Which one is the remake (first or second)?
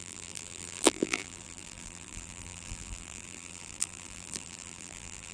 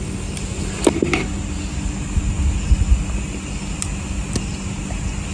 first